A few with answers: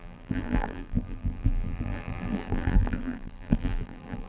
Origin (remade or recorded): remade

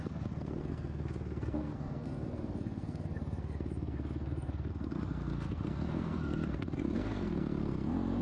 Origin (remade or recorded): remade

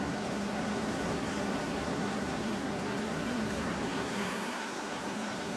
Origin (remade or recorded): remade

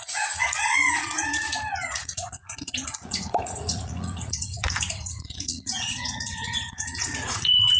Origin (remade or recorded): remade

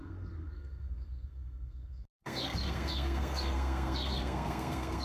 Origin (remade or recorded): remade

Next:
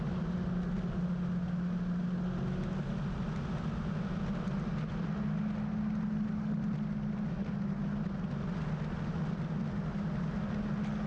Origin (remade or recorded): recorded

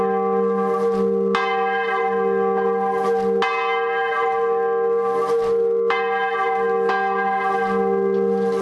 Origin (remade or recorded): recorded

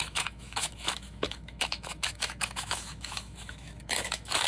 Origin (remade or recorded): remade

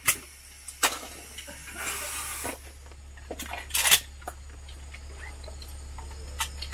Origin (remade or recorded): recorded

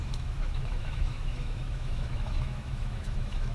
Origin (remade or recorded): remade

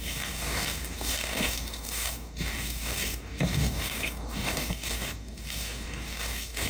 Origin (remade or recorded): remade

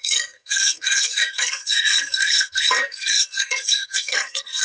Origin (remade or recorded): remade